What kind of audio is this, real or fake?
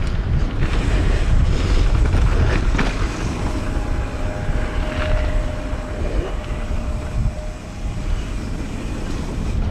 real